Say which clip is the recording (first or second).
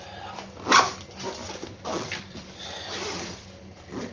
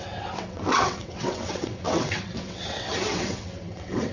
first